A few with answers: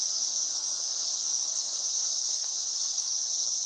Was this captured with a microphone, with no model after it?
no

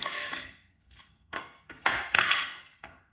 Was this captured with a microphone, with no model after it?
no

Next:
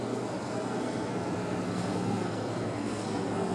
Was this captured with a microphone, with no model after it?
no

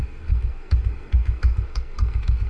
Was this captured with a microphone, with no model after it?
no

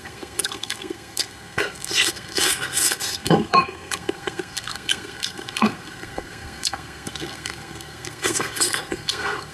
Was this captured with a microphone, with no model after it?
no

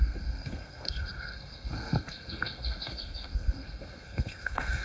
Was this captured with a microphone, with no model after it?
no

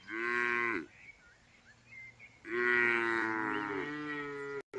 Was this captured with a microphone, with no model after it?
yes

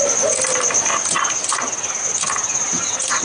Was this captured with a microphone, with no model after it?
yes